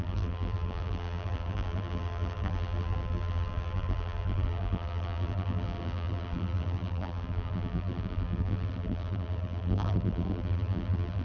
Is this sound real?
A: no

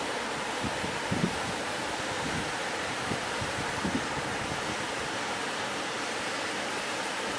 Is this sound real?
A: no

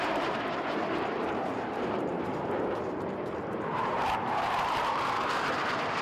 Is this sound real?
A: no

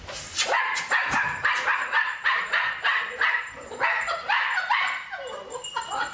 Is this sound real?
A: no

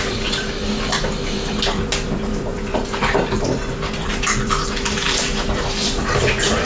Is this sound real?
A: no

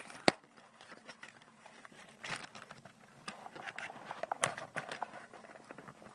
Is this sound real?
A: no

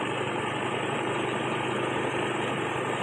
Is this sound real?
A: yes